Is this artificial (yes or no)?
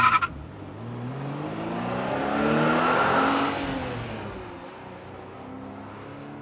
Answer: no